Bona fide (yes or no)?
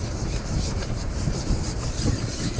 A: no